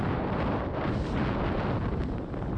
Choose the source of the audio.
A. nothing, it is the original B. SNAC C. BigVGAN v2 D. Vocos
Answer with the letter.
A